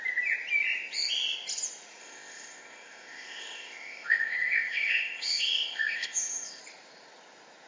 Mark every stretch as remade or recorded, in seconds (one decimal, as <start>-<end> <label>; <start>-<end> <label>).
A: 0.0-2.0 recorded; 2.0-6.6 remade; 6.6-7.7 recorded